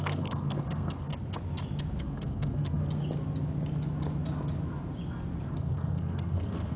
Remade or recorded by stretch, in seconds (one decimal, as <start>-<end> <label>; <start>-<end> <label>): 0.0-1.1 remade; 1.1-2.0 recorded; 2.0-2.8 remade; 2.8-5.5 recorded; 5.5-6.8 remade